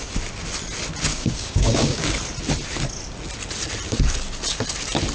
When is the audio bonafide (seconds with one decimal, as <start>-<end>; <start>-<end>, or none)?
0.0-1.1; 2.1-5.1